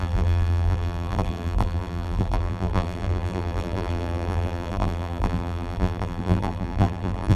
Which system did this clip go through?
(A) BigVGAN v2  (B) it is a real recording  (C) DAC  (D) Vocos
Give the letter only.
A